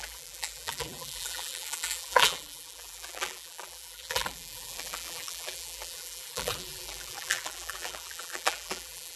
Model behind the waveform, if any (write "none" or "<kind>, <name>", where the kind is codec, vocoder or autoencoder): vocoder, BigVGAN v2